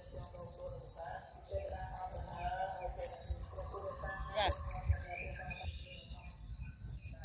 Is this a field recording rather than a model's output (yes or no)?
yes